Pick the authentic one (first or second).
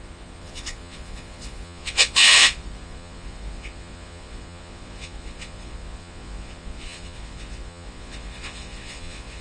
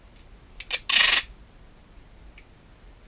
second